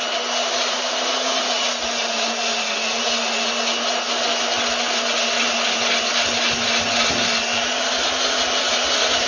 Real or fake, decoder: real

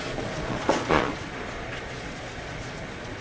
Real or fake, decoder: fake, vocoder, Vocos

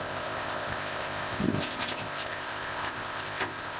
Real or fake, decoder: fake, codec, ZipCodec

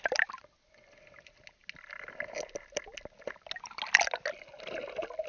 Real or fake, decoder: real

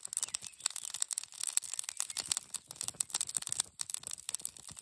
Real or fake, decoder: real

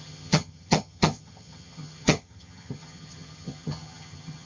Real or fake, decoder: fake, vocoder, HiFi-GAN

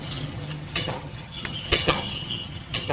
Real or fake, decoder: fake, vocoder, HiFi-GAN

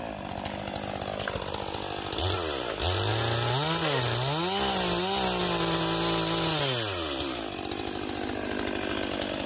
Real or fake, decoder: real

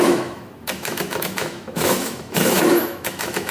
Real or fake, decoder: fake, autoencoder, DAC-VAE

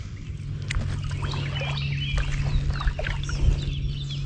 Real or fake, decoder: real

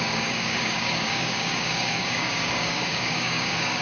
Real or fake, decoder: fake, codec, DAC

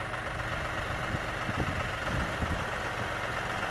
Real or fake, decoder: real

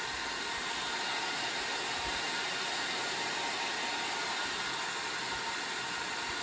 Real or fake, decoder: real